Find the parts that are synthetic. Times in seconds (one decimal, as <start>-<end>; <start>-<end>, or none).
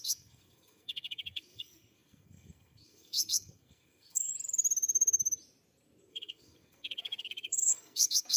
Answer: 0.0-4.3; 6.1-8.4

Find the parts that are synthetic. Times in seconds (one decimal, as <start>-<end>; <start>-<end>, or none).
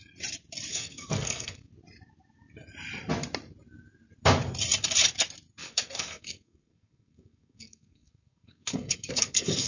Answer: 0.7-1.7; 5.6-9.7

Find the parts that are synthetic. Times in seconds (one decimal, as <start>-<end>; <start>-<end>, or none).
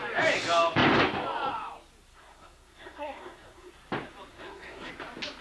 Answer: 2.1-3.7; 4.3-4.9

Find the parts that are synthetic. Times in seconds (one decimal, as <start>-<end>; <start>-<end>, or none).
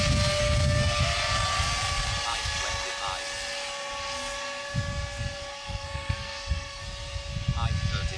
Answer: 0.4-1.0; 5.5-6.8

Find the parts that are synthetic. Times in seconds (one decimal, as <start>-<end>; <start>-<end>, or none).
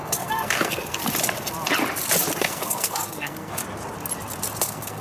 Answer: 0.0-1.0; 2.4-3.6; 4.6-5.0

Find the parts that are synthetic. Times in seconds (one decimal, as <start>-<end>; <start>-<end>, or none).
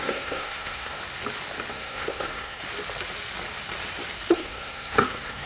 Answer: 0.0-1.0; 1.7-2.6; 4.3-5.5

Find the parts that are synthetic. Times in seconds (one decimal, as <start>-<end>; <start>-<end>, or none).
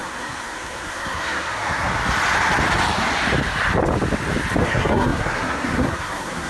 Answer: 0.0-1.9; 4.6-6.5